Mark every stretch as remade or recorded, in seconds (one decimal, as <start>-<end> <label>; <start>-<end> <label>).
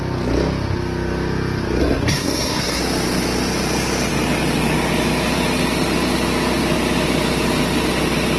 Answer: 0.0-1.8 recorded; 1.8-2.8 remade; 2.8-8.4 recorded